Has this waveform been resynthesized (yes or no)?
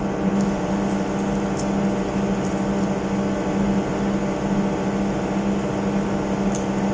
no